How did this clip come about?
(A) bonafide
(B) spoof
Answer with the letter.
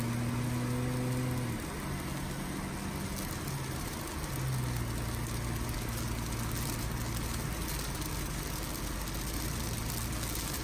A